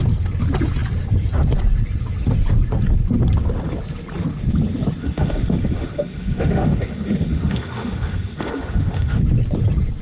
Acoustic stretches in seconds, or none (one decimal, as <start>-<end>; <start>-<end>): 0.0-5.0; 9.2-10.0